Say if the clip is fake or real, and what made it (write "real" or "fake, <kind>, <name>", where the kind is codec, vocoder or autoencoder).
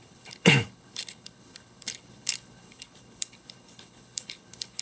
fake, codec, HILCodec